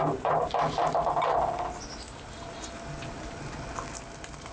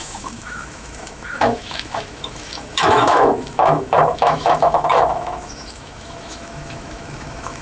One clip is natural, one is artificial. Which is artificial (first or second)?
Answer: second